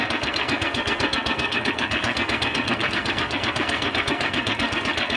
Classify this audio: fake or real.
fake